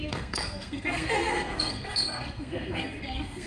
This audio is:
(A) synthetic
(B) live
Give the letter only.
A